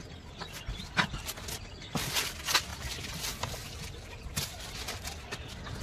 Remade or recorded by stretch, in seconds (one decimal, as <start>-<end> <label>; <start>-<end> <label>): 0.0-5.8 recorded